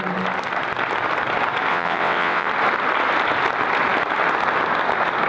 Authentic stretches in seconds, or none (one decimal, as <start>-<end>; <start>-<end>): 0.0-1.7; 2.5-5.3

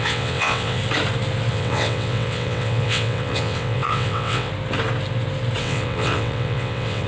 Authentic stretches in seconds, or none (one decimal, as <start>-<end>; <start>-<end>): 0.8-1.5; 4.5-5.6

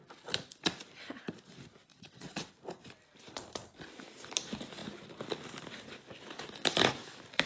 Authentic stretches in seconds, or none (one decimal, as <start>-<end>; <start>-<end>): 0.0-1.9; 2.5-7.5

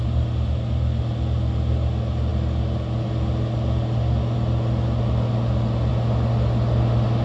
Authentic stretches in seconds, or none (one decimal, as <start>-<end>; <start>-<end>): 0.0-7.2

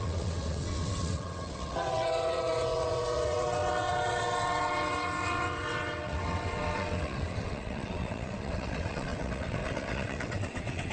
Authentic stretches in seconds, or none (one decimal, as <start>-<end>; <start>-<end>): none